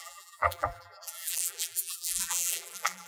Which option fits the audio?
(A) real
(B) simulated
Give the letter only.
B